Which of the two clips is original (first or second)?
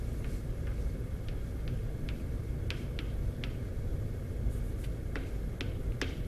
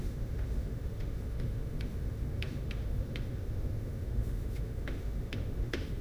first